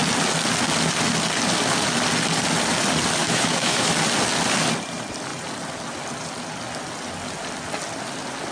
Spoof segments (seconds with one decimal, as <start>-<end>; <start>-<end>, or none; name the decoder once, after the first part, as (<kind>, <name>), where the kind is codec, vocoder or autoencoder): 3.2-3.9 (autoencoder, DAC-VAE)